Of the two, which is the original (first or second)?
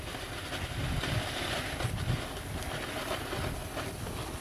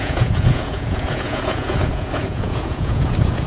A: first